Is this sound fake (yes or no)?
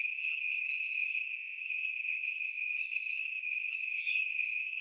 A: yes